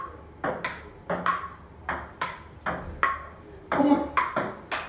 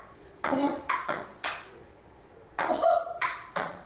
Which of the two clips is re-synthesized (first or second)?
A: second